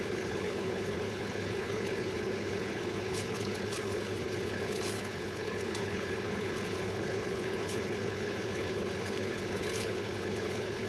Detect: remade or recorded remade